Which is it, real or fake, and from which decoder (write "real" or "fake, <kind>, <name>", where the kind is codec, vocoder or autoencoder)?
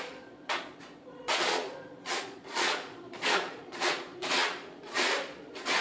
fake, vocoder, Vocos